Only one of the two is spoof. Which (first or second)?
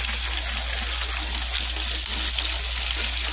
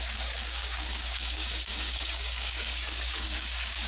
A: second